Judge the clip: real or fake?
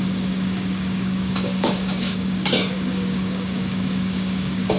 fake